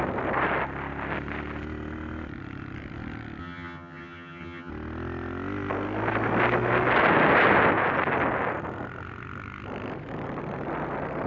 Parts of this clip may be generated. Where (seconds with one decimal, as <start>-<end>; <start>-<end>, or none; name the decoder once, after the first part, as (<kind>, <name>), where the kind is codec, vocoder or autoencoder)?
3.4-4.7 (vocoder, HiFi-GAN)